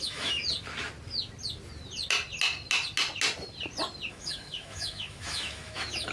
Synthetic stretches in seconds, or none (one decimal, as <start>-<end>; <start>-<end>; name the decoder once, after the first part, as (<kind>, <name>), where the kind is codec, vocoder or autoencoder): 0.0-0.4 (autoencoder, DAC-VAE); 4.1-6.1